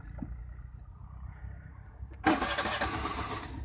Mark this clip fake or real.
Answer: real